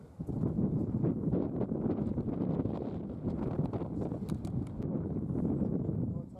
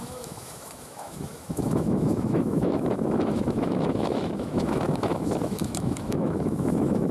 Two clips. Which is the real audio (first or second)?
first